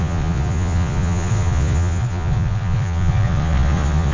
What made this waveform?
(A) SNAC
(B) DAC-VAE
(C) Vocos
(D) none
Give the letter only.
C